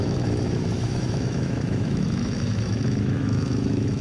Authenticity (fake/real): fake